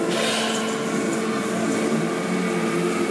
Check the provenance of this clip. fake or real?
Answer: real